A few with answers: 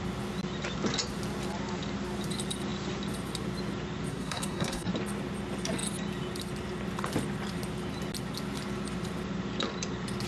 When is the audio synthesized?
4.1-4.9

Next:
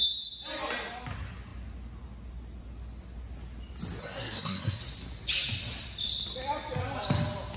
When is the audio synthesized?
4.0-4.8

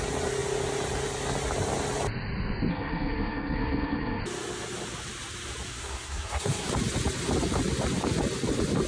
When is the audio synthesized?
2.7-4.2; 5.7-6.7

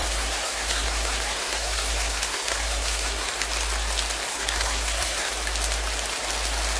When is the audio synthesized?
0.0-3.3; 4.3-5.3

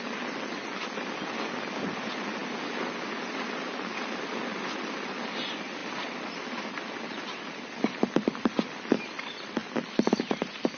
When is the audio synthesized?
none

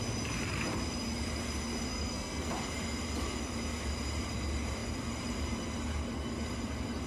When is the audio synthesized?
1.9-2.5